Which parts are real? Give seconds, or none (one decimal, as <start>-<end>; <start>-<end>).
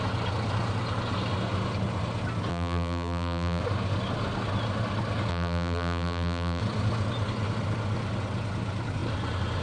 0.0-2.5; 3.6-5.3; 6.6-9.6